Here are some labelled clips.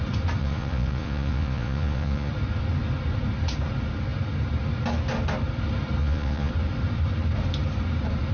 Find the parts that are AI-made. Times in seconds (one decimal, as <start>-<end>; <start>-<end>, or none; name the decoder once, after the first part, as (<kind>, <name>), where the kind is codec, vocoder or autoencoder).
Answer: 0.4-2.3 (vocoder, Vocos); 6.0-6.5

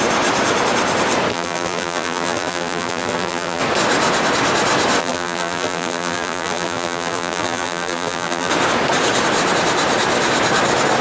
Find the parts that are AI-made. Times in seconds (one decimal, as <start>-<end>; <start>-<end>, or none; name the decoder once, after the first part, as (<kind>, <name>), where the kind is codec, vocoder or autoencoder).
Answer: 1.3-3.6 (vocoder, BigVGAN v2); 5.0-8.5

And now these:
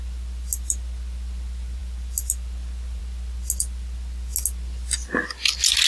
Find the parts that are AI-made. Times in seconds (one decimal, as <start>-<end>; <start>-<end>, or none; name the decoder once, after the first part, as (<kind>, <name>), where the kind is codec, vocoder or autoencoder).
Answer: none